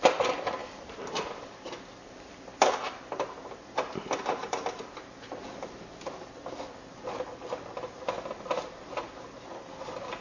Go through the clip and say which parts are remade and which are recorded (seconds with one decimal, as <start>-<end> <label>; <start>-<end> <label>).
0.0-0.6 recorded; 0.6-4.9 remade; 4.9-10.2 recorded

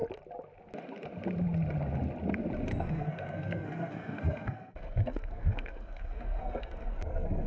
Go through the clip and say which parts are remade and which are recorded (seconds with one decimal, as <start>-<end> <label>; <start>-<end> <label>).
0.0-2.7 recorded; 2.7-7.5 remade

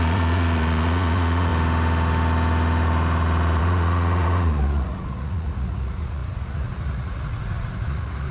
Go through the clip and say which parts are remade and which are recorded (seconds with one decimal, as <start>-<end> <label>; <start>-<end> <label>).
0.0-1.5 remade; 1.5-3.6 recorded; 3.6-8.3 remade

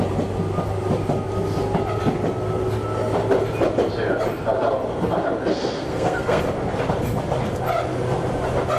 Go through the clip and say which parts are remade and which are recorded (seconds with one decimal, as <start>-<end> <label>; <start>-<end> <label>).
0.0-5.5 recorded; 5.5-6.4 remade; 6.4-8.8 recorded